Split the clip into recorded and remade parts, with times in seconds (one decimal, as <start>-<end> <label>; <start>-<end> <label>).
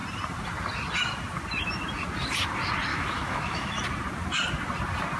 0.0-2.9 recorded; 2.9-3.8 remade; 3.8-5.2 recorded